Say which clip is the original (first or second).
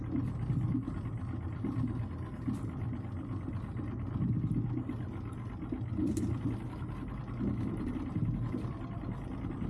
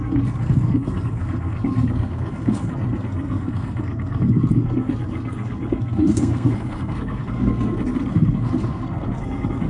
first